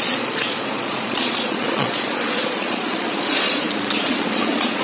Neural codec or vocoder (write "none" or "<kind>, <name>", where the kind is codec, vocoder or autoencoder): vocoder, Vocos